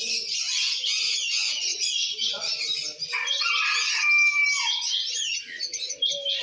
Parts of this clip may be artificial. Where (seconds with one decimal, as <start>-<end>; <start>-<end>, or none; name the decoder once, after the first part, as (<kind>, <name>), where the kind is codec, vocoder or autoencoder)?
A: 1.7-2.3 (vocoder, Vocos)